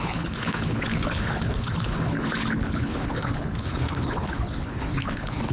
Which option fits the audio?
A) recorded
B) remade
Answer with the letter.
B